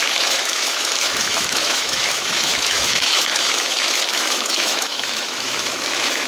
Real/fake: fake